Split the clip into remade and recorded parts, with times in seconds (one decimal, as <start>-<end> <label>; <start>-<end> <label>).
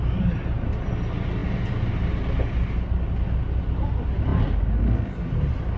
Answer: 0.0-5.8 recorded